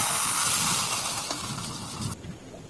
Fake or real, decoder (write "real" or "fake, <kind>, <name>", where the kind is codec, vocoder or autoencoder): real